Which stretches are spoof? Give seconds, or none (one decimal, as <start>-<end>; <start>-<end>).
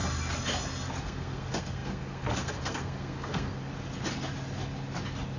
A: 1.0-3.7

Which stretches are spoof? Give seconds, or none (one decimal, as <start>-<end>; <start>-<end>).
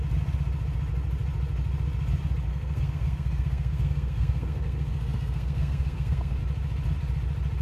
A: 2.5-6.4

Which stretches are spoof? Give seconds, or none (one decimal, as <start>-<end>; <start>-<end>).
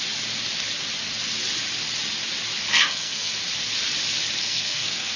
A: 2.7-3.3; 4.4-5.2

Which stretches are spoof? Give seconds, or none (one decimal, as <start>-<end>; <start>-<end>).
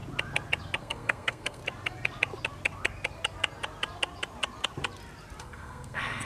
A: 0.8-1.6; 5.4-6.3